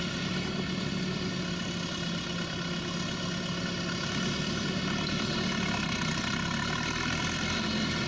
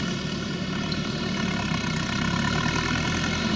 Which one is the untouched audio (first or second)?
first